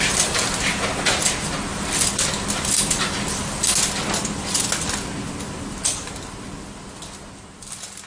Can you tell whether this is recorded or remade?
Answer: recorded